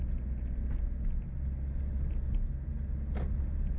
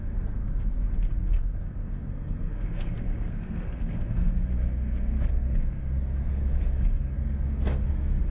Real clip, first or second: first